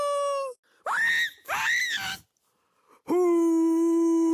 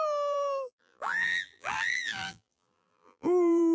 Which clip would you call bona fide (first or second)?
first